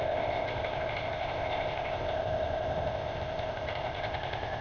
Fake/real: fake